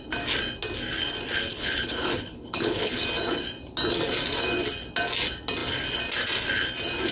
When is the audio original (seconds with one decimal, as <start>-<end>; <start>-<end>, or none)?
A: 0.0-1.5; 3.0-7.1